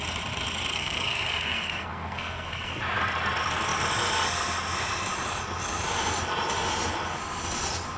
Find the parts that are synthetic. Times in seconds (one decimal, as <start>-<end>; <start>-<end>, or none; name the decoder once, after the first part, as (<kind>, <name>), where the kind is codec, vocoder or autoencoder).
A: 0.7-2.8 (codec, SNAC)